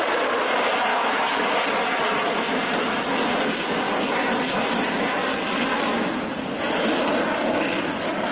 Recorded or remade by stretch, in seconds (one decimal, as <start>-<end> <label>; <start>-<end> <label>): 0.0-0.9 recorded; 0.9-1.6 remade; 1.6-8.3 recorded